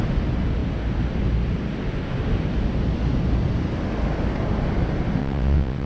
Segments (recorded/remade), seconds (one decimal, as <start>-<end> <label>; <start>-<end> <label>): 0.0-5.2 recorded; 5.2-5.9 remade